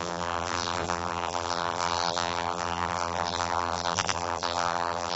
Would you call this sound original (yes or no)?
no